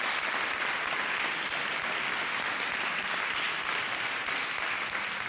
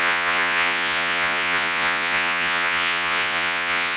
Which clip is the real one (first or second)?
first